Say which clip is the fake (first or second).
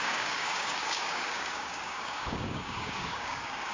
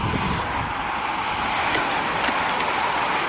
first